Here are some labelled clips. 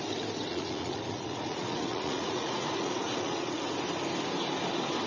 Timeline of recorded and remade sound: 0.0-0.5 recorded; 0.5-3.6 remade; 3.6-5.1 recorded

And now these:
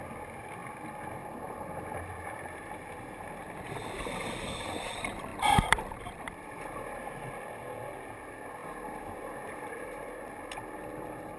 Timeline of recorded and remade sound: 0.0-1.2 recorded; 1.2-2.7 remade; 2.7-5.3 recorded; 5.3-7.3 remade; 7.3-8.6 recorded; 8.6-10.6 remade; 10.6-11.4 recorded

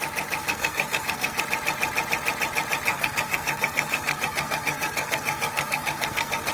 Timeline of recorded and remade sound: 0.0-0.4 recorded; 0.4-1.4 remade; 1.4-2.9 recorded; 2.9-6.5 remade